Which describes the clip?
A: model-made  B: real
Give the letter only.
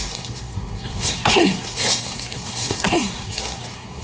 A